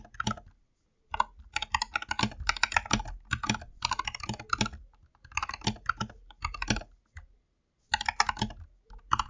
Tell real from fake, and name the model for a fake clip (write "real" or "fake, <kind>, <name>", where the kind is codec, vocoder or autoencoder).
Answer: real